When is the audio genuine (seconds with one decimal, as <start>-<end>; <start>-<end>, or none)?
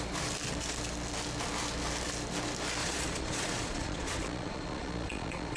0.0-2.8